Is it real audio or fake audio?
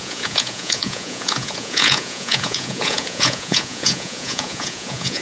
fake